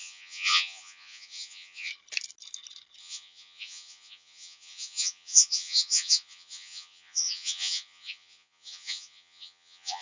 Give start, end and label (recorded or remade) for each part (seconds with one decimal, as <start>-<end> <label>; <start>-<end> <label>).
0.0-1.9 remade; 1.9-3.0 recorded; 3.0-10.0 remade